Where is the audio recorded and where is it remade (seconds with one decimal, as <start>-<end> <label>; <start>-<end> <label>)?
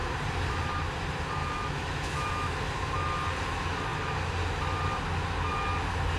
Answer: 0.0-1.4 recorded; 1.4-2.3 remade; 2.3-6.2 recorded